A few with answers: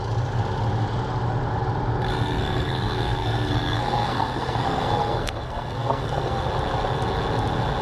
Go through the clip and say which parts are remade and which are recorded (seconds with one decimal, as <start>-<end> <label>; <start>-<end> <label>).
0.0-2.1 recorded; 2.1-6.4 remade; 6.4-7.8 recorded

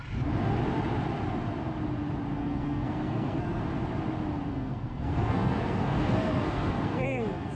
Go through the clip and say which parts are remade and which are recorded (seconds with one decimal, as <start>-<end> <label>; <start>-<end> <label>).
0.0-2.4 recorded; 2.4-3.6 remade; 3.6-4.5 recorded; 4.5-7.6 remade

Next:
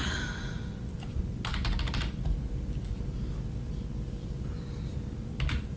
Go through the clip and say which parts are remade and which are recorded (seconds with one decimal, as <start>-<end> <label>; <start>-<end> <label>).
0.0-5.8 recorded